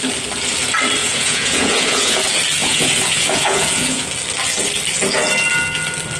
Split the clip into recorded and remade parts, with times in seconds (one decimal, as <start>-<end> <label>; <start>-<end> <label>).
0.0-1.0 recorded; 1.0-2.2 remade; 2.2-2.6 recorded; 2.6-4.1 remade; 4.1-6.2 recorded